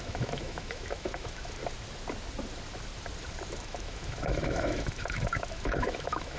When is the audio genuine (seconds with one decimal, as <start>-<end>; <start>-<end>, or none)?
1.6-3.5